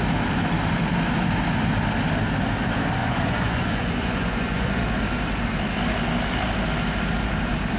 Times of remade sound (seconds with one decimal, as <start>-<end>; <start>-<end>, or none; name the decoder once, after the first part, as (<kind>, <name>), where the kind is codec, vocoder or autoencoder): 3.0-4.8 (vocoder, Vocos)